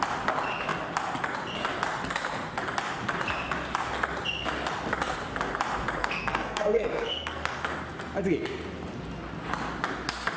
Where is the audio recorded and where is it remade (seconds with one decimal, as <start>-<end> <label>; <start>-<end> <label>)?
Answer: 0.0-6.0 recorded; 6.0-7.6 remade; 7.6-10.4 recorded